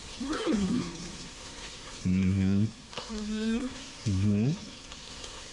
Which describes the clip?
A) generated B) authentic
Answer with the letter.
A